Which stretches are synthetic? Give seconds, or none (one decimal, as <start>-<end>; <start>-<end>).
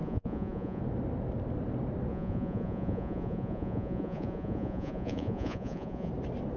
0.0-0.8; 2.1-6.1